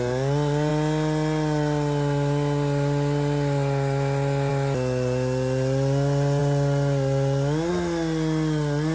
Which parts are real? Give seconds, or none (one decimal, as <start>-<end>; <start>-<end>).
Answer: 0.0-8.9

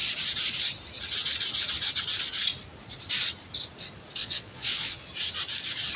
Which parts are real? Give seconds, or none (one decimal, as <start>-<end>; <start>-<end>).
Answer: 0.0-4.2; 5.1-6.0

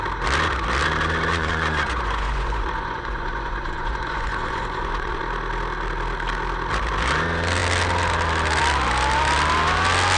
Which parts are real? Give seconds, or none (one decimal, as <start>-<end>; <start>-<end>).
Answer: 0.0-1.3; 5.2-10.2